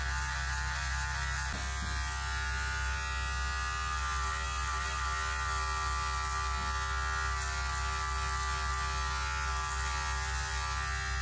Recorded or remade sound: recorded